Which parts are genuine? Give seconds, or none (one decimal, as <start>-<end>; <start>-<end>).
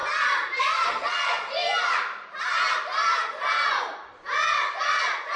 0.0-0.6; 1.6-4.8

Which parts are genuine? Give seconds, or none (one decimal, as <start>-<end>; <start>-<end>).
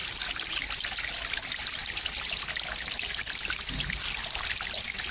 0.0-5.1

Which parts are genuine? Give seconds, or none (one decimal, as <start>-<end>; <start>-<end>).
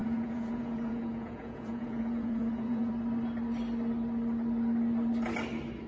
2.9-5.9